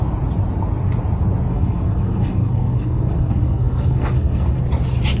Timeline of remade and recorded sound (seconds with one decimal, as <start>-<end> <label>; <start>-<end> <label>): 0.0-1.5 recorded; 1.5-4.6 remade; 4.6-5.2 recorded